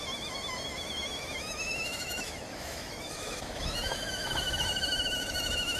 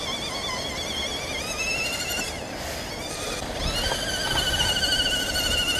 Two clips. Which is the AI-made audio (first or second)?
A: first